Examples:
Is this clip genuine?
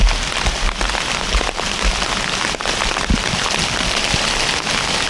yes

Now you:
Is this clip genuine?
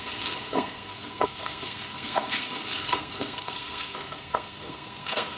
no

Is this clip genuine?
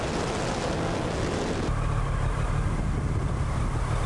yes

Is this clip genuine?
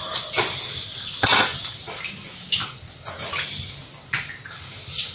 yes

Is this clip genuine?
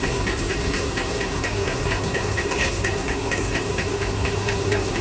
no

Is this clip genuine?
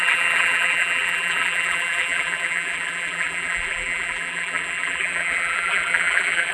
no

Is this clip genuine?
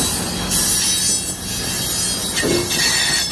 yes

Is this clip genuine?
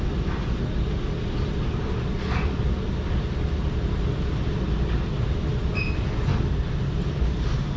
yes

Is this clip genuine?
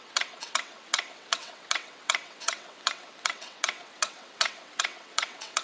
no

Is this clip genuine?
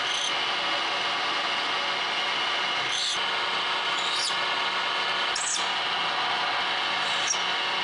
yes